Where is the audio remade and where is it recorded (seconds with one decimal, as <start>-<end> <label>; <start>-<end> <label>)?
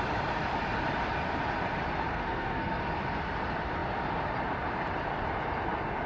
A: 0.0-2.1 recorded; 2.1-2.8 remade; 2.8-6.1 recorded